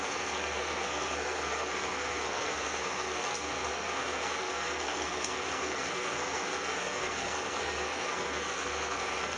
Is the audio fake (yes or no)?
yes